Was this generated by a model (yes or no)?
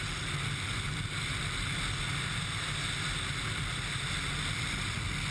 no